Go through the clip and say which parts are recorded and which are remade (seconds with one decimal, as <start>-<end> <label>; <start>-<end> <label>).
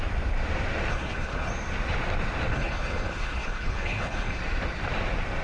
0.0-0.9 recorded; 0.9-1.5 remade; 1.5-2.5 recorded; 2.5-4.4 remade; 4.4-5.4 recorded